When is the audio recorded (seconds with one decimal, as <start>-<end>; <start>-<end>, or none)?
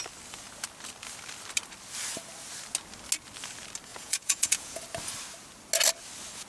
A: 0.0-3.9; 4.8-6.5